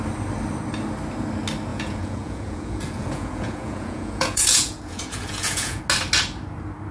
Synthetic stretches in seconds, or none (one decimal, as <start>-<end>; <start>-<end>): 1.7-5.8